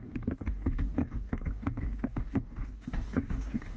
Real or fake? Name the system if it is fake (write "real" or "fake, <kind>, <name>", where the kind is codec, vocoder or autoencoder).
fake, codec, DAC